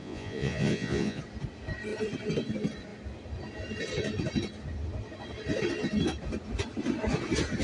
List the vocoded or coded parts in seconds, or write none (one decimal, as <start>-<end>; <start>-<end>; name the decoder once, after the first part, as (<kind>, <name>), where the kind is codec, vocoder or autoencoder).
0.0-1.2 (vocoder, Vocos)